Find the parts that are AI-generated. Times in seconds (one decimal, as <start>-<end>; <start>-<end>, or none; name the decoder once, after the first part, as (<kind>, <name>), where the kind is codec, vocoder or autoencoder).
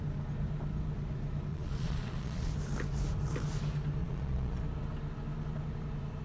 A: 1.5-2.5 (vocoder, Vocos); 4.0-4.6